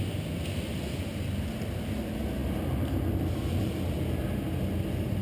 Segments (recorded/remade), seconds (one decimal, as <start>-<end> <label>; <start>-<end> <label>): 0.0-5.2 recorded